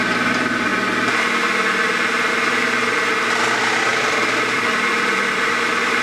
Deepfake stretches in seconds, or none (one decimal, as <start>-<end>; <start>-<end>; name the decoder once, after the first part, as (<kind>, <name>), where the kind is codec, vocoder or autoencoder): 3.9-5.5 (vocoder, BigVGAN v2)